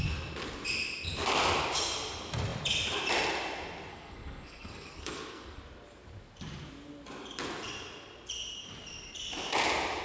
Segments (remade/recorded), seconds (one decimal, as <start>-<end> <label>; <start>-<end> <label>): 0.0-3.9 recorded; 3.9-5.6 remade; 5.6-10.0 recorded

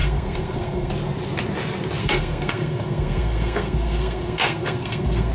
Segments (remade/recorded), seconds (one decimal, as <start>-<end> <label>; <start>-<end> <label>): 0.0-0.9 remade; 0.9-2.0 recorded; 2.0-5.3 remade